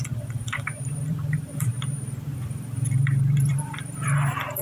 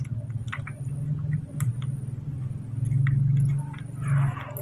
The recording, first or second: second